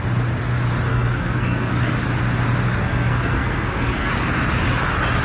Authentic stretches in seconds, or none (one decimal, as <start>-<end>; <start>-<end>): 0.0-0.9; 1.9-2.8; 4.1-5.2